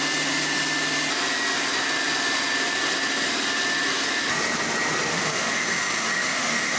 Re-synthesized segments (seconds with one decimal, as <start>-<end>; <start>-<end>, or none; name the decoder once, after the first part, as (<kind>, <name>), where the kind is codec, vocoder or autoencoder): 5.1-6.8 (autoencoder, DAC-VAE)